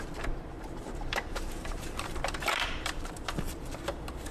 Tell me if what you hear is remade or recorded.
remade